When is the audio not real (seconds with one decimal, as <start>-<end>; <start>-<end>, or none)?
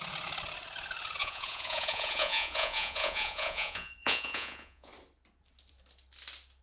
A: 1.2-4.9